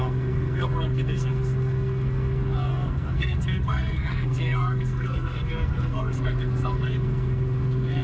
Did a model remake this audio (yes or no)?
yes